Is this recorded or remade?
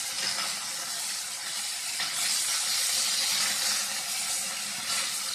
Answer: recorded